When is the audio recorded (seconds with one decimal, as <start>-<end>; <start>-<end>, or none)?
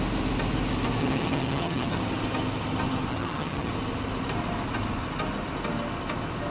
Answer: 0.0-1.0; 2.0-3.1; 3.7-6.5